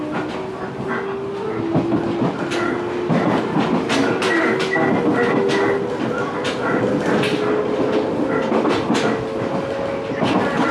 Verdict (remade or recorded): recorded